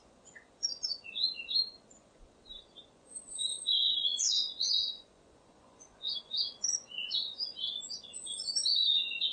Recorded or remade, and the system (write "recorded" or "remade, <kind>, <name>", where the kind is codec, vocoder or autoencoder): remade, vocoder, Vocos